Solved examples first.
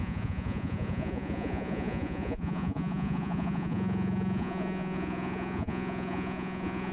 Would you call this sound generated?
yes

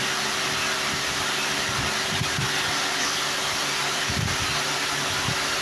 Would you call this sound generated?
no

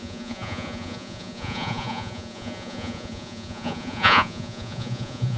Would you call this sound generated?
yes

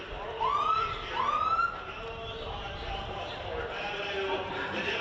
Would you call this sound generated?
no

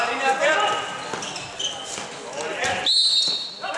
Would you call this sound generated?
no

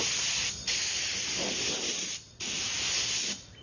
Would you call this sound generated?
no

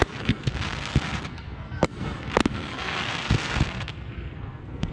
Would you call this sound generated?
yes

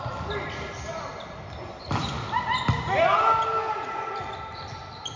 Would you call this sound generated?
no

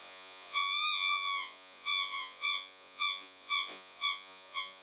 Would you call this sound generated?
yes